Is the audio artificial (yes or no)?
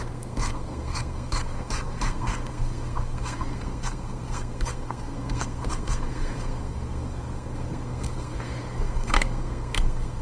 yes